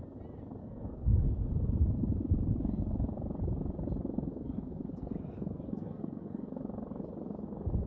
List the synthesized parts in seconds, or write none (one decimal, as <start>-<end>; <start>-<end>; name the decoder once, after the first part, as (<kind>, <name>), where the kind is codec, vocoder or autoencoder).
0.6-1.5 (codec, SNAC); 4.2-6.6